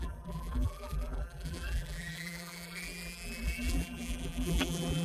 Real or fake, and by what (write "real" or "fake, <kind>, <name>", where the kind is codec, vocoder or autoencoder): fake, vocoder, BigVGAN v2